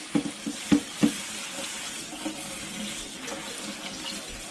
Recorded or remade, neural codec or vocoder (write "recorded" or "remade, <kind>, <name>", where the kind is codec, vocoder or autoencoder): recorded